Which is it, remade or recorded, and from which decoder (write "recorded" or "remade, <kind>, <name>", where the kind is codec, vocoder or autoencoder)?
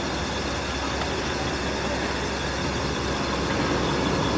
recorded